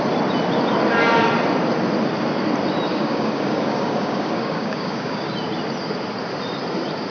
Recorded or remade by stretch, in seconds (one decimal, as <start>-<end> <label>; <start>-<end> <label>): 0.0-2.9 recorded; 2.9-5.3 remade; 5.3-7.1 recorded